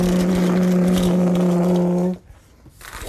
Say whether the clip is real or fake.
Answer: real